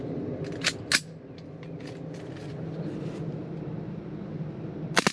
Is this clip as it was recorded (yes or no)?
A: yes